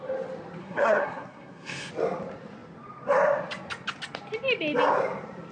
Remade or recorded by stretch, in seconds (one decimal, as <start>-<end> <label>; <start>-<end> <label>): 0.0-0.6 recorded; 0.6-1.9 remade; 1.9-5.5 recorded